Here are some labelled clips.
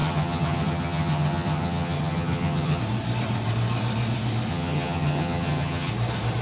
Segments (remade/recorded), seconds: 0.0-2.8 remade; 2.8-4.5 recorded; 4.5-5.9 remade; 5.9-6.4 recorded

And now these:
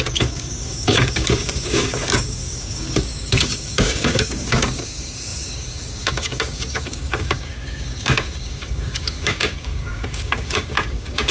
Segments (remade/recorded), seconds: 0.0-11.3 remade

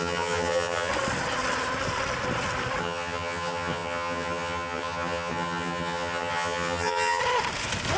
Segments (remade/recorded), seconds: 0.0-0.9 remade; 0.9-2.8 recorded; 2.8-7.2 remade; 7.2-8.0 recorded